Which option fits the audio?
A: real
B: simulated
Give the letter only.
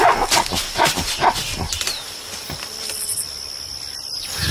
A